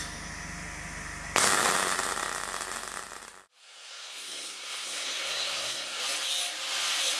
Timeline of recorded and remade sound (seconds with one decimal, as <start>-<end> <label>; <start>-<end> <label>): 0.0-3.6 recorded; 3.6-6.0 remade; 6.0-7.2 recorded